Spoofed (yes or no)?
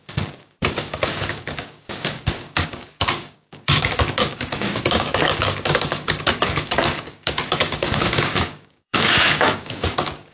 yes